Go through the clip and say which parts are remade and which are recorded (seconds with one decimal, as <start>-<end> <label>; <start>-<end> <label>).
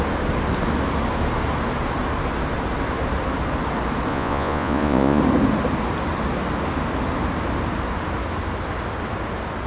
0.0-4.1 recorded; 4.1-5.2 remade; 5.2-9.7 recorded